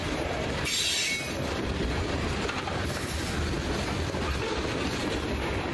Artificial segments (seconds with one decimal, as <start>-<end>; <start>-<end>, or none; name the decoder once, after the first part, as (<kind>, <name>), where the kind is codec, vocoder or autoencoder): none